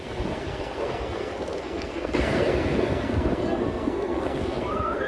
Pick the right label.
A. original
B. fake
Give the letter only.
B